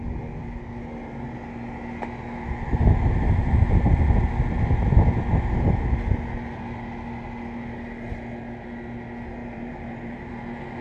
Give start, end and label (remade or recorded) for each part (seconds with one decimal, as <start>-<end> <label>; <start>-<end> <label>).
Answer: 0.0-9.4 recorded; 9.4-10.3 remade; 10.3-10.8 recorded